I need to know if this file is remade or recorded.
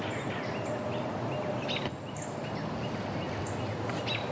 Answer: recorded